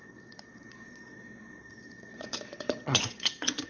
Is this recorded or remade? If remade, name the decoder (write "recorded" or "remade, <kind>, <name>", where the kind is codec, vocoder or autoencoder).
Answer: remade, vocoder, Vocos